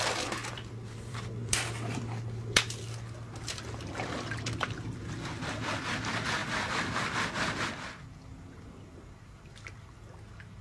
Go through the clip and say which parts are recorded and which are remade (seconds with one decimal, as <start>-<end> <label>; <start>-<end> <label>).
0.0-0.4 recorded; 0.4-3.9 remade; 3.9-10.6 recorded

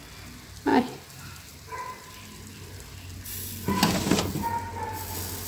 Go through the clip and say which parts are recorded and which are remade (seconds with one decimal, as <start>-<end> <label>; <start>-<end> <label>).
0.0-0.7 recorded; 0.7-4.0 remade; 4.0-5.5 recorded